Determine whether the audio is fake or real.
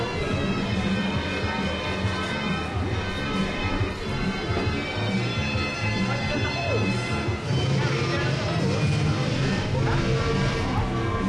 real